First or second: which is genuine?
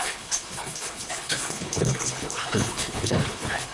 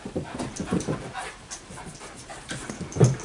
second